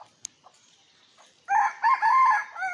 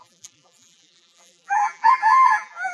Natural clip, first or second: first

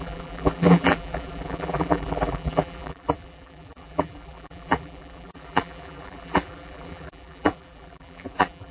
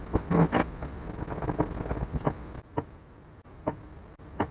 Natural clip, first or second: second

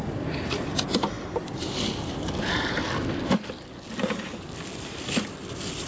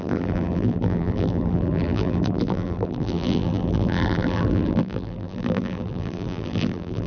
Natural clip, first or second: first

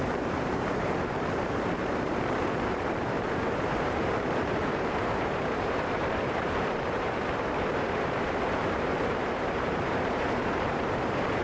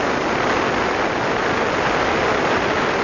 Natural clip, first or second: second